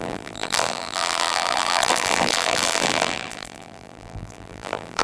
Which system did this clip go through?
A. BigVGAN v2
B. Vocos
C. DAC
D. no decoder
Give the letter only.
A